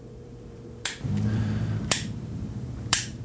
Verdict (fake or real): fake